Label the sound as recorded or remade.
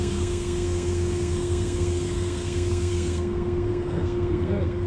remade